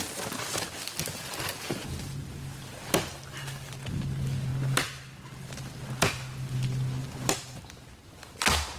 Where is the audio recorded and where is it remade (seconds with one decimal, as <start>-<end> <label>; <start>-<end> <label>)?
0.0-8.8 recorded